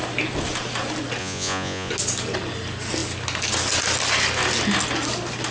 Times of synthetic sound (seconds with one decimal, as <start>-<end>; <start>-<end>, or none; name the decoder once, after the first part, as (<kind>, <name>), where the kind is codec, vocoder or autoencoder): 1.2-1.9 (vocoder, Vocos)